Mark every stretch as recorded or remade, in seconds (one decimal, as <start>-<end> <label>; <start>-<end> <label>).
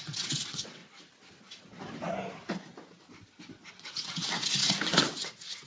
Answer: 0.0-0.8 remade; 0.8-3.7 recorded; 3.7-5.7 remade